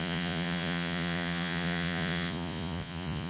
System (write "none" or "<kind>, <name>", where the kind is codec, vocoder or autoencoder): vocoder, Vocos